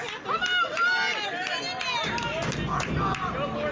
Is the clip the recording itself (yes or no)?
yes